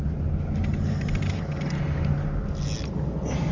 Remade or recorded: recorded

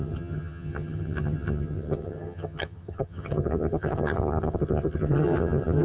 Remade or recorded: remade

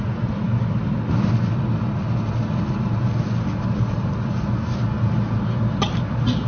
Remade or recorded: recorded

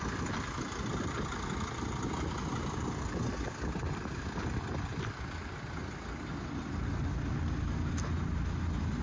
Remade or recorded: recorded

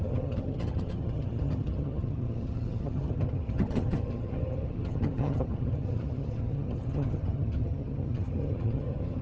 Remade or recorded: remade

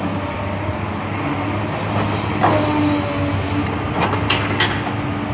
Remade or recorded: recorded